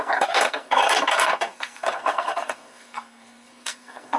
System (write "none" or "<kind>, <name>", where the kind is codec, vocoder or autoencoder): codec, SNAC